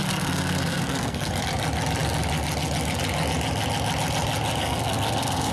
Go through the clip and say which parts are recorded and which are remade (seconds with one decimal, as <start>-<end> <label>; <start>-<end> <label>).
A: 0.0-1.3 remade; 1.3-4.6 recorded; 4.6-5.5 remade